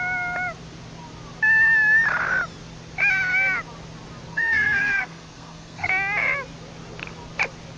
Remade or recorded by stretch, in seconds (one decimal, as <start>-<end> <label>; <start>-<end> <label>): 0.0-4.3 recorded; 4.3-5.9 remade; 5.9-7.8 recorded